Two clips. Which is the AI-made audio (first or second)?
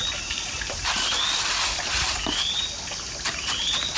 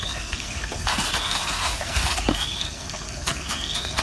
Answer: second